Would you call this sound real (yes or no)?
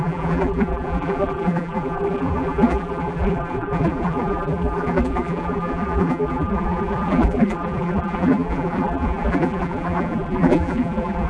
no